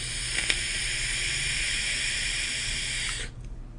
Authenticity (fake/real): real